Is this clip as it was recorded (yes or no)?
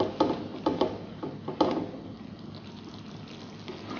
yes